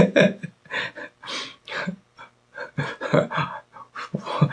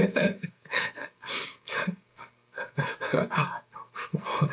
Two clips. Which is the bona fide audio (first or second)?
first